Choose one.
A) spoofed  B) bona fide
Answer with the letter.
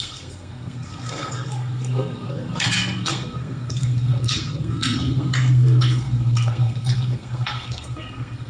A